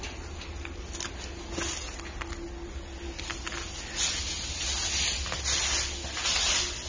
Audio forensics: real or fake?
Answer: real